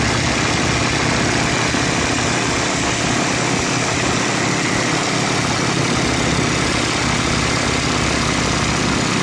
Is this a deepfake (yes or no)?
no